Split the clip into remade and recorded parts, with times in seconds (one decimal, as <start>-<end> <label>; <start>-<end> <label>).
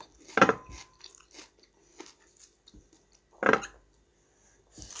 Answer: 0.0-5.0 recorded